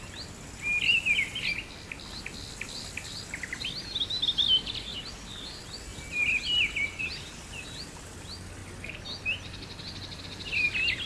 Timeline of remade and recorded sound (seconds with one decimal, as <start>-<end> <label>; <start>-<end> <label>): 0.0-11.1 recorded